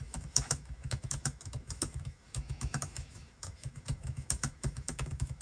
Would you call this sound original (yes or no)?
no